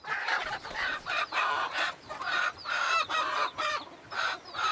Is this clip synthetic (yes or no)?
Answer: yes